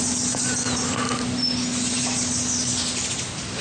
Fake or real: real